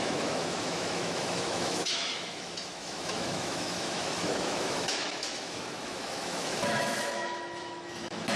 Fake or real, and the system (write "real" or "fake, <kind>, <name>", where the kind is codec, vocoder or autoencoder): fake, autoencoder, DAC-VAE